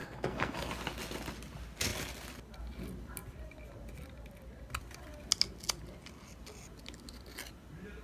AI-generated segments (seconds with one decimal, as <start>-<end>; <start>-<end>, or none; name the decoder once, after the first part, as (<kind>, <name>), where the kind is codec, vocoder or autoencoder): 0.0-0.7 (codec, SNAC)